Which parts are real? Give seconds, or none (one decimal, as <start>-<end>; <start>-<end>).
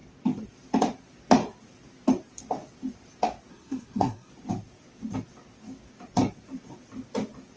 0.0-3.5; 4.3-7.6